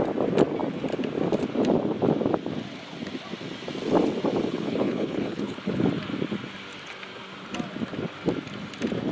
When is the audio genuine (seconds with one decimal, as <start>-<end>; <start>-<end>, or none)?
0.0-4.5; 5.9-9.1